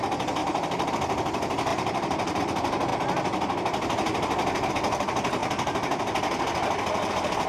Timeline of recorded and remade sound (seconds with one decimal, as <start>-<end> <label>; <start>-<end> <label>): 0.0-0.4 recorded; 0.4-0.9 remade; 0.9-1.7 recorded; 1.7-2.4 remade; 2.4-7.5 recorded